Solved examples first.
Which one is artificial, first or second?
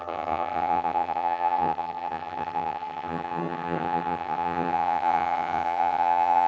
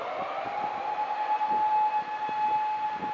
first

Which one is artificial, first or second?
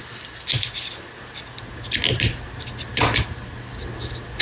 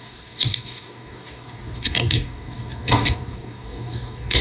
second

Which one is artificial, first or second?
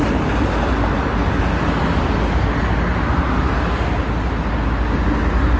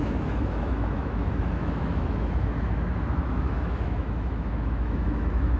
second